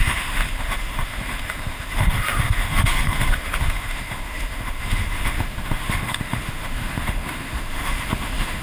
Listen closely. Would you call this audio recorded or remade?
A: remade